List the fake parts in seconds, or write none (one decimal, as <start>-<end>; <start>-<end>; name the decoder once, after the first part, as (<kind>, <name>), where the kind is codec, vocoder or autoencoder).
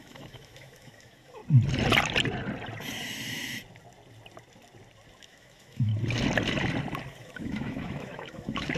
0.0-1.4 (autoencoder, DAC-VAE); 5.2-5.9; 7.2-8.8